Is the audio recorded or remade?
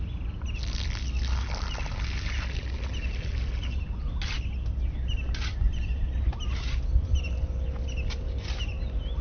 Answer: recorded